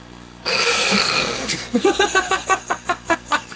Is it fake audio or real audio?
fake